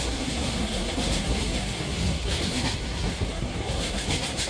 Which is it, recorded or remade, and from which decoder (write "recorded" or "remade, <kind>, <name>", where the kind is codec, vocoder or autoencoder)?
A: remade, codec, SNAC